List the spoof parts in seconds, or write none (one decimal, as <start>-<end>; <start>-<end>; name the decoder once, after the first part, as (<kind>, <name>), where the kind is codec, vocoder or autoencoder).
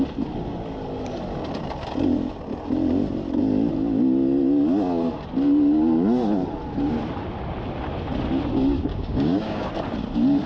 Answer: 8.9-9.7 (codec, DAC)